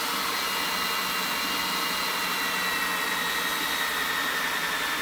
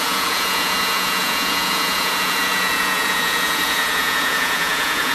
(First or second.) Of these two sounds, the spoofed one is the second